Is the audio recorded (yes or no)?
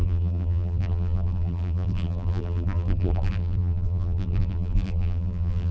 no